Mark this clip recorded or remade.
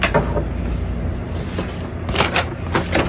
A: recorded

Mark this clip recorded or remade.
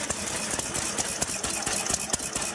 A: recorded